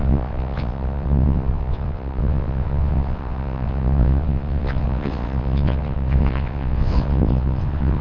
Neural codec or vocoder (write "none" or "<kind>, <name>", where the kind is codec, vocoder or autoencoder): vocoder, WaveNeXt